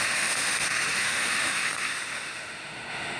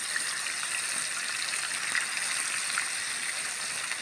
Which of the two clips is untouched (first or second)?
second